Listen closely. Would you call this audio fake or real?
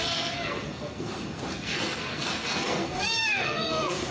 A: fake